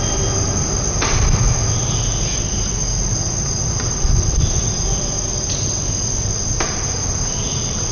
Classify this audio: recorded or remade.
recorded